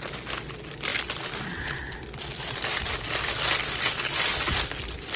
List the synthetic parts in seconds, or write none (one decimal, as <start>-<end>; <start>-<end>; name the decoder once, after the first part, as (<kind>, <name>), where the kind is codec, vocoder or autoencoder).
none